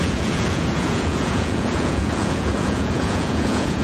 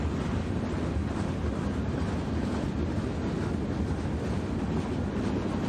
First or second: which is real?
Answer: second